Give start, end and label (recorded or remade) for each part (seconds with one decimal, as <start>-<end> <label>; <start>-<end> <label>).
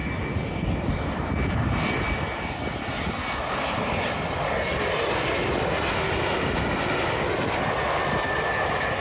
0.0-9.0 recorded